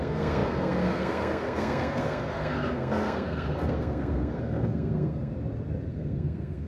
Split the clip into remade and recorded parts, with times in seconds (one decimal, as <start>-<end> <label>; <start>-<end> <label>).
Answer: 0.0-5.3 remade; 5.3-5.9 recorded; 5.9-6.7 remade